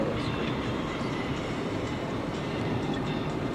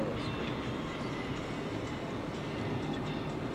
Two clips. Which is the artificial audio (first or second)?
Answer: first